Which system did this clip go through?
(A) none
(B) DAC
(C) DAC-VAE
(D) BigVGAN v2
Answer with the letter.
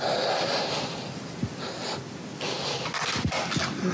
A